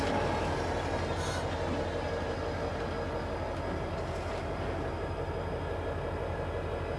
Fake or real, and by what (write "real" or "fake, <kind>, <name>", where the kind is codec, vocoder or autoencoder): real